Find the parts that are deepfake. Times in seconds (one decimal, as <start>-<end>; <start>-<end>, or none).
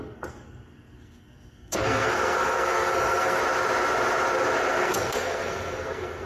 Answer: 0.0-3.4; 4.7-6.3